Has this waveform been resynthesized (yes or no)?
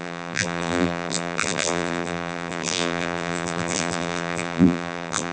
yes